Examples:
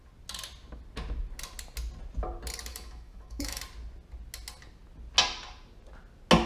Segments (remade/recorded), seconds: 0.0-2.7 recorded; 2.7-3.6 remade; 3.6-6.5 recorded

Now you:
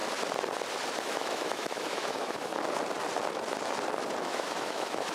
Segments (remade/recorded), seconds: 0.0-1.0 recorded; 1.0-2.5 remade; 2.5-4.2 recorded; 4.2-5.1 remade

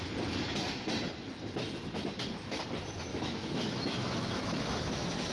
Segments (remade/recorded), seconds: 0.0-3.1 recorded; 3.1-5.3 remade

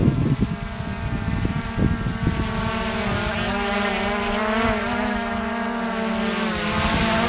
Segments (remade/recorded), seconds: 0.0-7.3 recorded

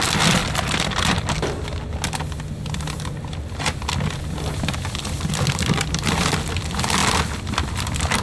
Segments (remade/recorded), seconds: 0.0-8.2 recorded

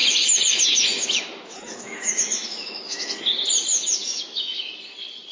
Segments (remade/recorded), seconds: 0.0-3.2 remade; 3.2-3.7 recorded; 3.7-4.7 remade; 4.7-5.3 recorded

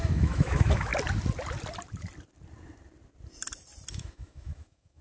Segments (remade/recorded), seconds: 0.0-0.9 remade; 0.9-3.9 recorded; 3.9-5.0 remade